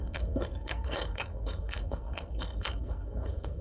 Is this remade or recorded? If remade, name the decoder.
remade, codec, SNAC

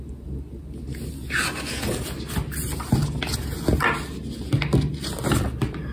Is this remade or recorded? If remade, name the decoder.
recorded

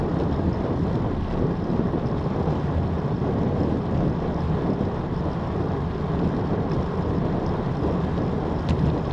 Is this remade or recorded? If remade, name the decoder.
recorded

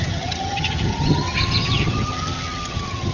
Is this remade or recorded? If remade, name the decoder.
remade, vocoder, HiFi-GAN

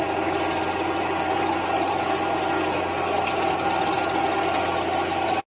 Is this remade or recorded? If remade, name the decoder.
recorded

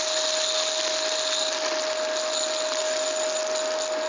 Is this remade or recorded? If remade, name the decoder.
recorded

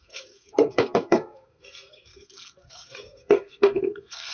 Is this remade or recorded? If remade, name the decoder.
remade, codec, SNAC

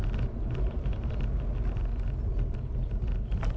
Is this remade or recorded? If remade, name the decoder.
recorded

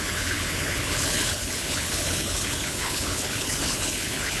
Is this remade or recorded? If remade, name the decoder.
remade, codec, HILCodec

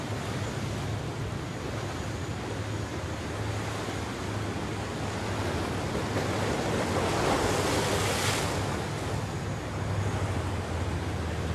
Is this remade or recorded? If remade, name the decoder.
recorded